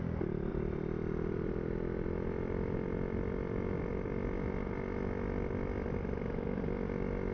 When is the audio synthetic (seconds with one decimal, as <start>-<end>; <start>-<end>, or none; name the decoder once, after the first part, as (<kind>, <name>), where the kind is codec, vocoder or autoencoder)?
0.5-3.9 (vocoder, BigVGAN v2)